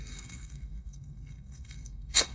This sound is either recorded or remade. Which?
remade